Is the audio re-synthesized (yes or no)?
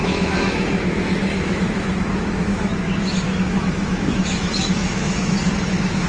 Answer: yes